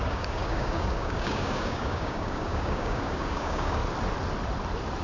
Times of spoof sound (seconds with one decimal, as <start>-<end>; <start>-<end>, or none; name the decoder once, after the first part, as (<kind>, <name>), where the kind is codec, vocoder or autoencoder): 0.0-3.8 (codec, DAC)

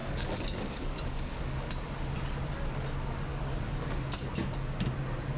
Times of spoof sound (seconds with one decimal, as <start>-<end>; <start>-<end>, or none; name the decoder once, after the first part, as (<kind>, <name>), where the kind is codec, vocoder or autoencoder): 0.0-1.7 (codec, DAC); 3.3-4.1

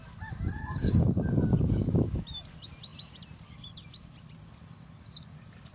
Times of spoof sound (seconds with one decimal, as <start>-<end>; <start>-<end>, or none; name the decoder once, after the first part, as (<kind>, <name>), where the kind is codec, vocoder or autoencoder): 0.6-2.2 (codec, DAC)

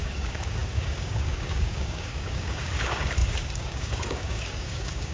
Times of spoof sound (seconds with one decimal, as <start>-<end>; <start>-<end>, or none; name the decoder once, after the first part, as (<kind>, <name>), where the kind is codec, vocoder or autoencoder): 0.0-5.1 (codec, DAC)

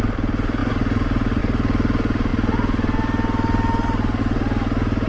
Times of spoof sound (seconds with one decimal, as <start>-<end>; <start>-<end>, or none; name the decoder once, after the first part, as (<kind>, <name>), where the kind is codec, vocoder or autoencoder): none

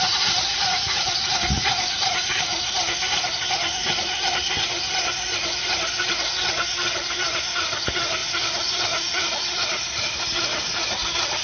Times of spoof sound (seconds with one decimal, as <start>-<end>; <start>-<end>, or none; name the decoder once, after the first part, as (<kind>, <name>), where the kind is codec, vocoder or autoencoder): none

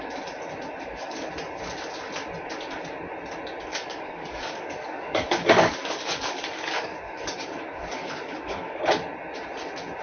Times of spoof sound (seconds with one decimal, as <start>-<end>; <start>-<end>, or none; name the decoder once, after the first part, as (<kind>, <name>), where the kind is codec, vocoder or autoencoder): 0.8-1.3 (codec, DAC); 3.7-8.8